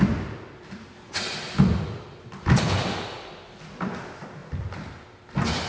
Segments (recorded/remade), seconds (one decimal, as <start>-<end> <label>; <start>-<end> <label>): 0.0-5.7 recorded